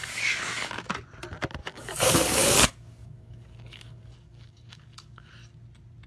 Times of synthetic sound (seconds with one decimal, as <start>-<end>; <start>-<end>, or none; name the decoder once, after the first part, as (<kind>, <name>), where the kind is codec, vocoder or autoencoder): 0.0-0.9 (codec, DAC); 1.6-5.3